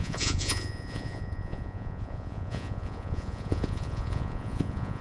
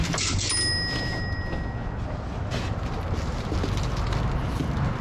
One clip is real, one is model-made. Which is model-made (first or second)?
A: first